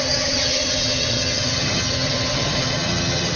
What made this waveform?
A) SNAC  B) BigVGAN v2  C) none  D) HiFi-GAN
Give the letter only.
D